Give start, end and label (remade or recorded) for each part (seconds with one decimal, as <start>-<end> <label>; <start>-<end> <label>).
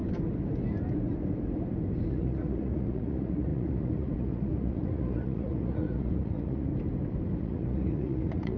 0.0-2.1 recorded; 2.1-6.7 remade; 6.7-7.4 recorded; 7.4-8.6 remade